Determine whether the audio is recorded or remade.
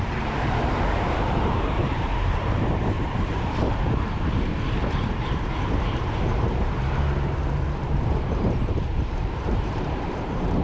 remade